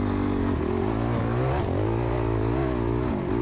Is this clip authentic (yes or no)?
yes